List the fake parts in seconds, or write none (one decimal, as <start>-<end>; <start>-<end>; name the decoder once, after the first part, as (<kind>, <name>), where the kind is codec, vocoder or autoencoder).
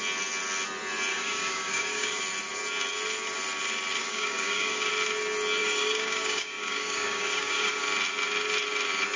1.1-2.2 (codec, DAC); 4.0-4.9; 5.6-7.8